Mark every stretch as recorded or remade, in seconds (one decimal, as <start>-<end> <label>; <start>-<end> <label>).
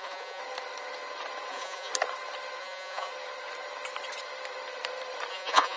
0.0-0.4 remade; 0.4-1.5 recorded; 1.5-1.9 remade; 1.9-2.6 recorded; 2.6-3.1 remade; 3.1-5.3 recorded; 5.3-5.8 remade